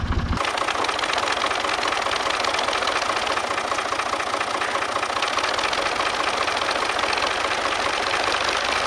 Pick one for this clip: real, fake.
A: real